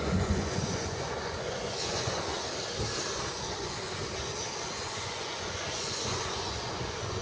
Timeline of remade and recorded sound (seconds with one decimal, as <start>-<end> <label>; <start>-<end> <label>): 0.0-2.3 remade; 2.3-3.3 recorded; 3.3-4.0 remade; 4.0-4.6 recorded; 4.6-7.2 remade